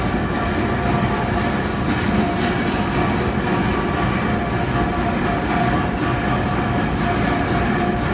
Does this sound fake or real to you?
real